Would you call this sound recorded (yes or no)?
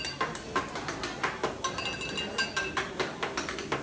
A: yes